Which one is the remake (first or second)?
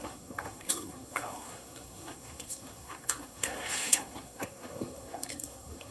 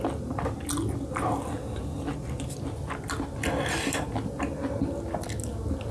first